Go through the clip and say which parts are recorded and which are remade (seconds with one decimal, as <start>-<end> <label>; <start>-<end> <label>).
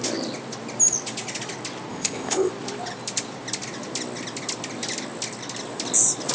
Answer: 0.0-1.9 recorded; 1.9-2.5 remade; 2.5-6.3 recorded